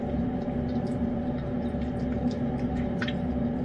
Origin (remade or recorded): recorded